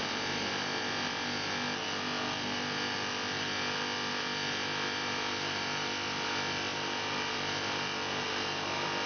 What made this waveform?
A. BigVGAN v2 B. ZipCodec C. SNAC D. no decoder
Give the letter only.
D